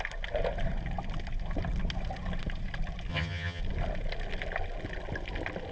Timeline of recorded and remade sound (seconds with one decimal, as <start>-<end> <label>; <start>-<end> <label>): 0.0-3.1 recorded; 3.1-3.6 remade; 3.6-5.7 recorded